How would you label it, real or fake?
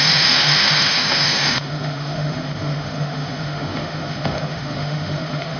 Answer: fake